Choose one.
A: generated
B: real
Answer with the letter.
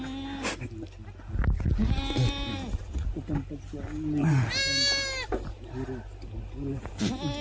B